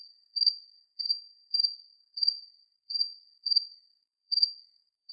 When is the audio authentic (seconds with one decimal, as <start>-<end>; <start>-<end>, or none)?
none